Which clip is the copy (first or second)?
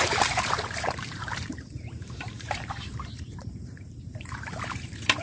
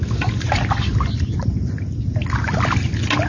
first